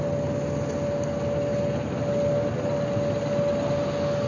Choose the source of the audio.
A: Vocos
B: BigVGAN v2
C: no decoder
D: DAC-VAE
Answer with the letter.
C